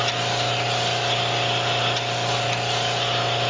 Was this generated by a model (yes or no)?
no